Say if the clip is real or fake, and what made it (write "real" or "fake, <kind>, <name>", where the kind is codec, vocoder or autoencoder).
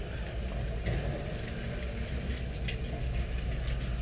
real